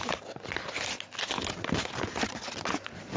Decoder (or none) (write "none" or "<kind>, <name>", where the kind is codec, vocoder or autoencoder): none